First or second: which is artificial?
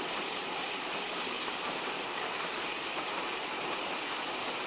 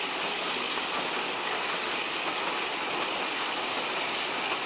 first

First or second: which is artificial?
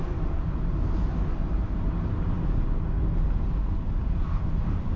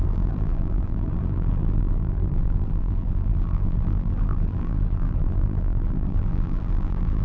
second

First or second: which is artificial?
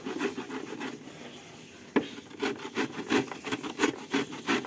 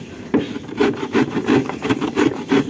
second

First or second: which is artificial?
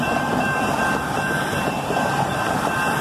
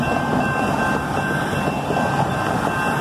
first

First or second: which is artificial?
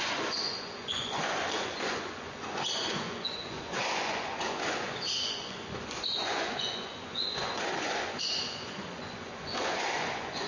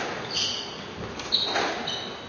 first